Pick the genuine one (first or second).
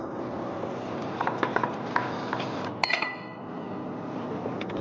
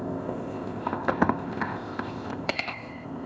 first